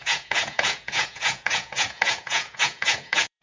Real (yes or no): no